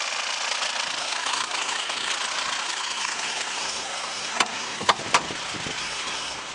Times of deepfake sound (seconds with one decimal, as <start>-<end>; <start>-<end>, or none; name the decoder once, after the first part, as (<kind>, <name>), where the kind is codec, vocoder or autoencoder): 1.0-2.1 (codec, SNAC); 2.6-5.0; 5.8-6.5